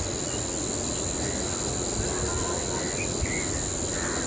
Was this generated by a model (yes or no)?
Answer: no